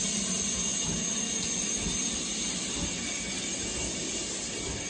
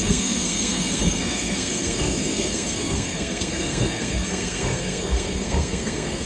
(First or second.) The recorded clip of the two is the first